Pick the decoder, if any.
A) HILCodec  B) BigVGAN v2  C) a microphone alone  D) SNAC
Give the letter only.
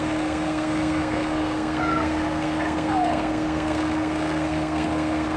D